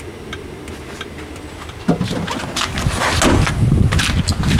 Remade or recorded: recorded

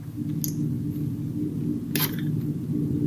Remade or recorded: recorded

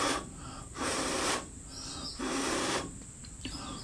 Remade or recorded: remade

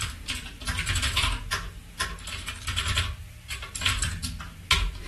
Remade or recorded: recorded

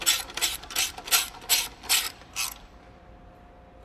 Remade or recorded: remade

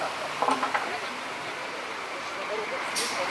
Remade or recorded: remade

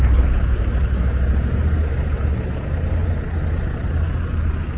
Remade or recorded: recorded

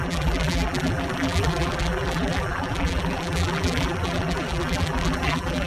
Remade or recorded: remade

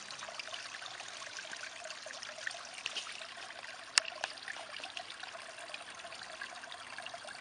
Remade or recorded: recorded